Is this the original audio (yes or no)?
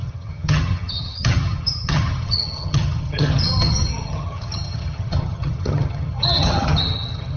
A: no